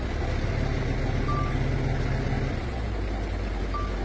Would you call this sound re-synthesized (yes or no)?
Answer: no